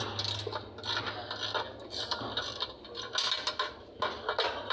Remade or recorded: recorded